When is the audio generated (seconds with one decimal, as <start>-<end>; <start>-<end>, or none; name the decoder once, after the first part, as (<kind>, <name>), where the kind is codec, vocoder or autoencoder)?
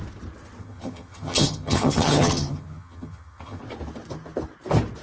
0.6-3.6 (vocoder, HiFi-GAN)